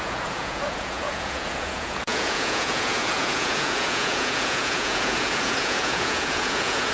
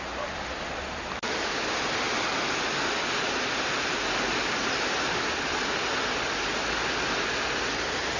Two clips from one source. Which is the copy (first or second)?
first